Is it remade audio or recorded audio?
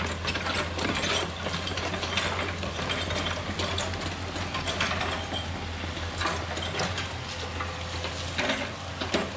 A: recorded